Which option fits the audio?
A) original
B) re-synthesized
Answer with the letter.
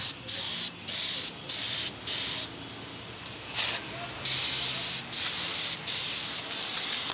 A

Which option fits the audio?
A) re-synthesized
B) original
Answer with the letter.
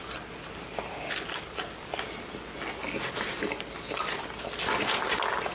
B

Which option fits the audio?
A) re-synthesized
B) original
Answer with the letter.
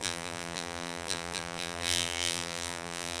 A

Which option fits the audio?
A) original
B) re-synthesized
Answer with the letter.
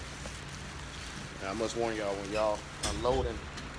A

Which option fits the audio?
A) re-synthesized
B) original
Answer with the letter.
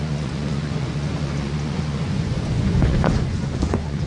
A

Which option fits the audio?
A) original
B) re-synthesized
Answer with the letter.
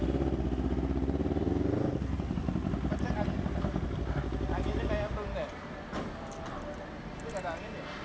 A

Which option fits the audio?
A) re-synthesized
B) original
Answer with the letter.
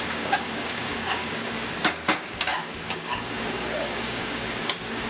A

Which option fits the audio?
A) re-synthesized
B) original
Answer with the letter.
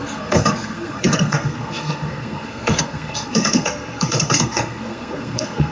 A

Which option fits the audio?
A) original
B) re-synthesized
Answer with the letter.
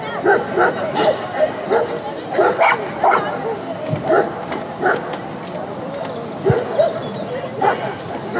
A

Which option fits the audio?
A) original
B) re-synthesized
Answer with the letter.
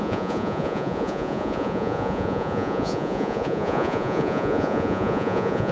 B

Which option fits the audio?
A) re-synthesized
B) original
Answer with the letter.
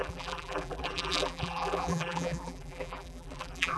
A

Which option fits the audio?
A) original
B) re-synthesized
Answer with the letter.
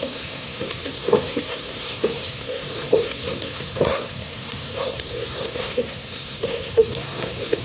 B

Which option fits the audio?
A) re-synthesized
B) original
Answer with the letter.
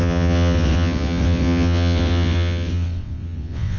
A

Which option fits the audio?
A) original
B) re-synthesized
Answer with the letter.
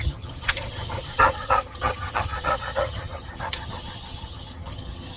B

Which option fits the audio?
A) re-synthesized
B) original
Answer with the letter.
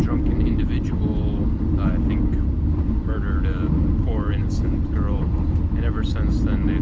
A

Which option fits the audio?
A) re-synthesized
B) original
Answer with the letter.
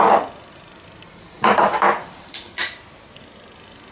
A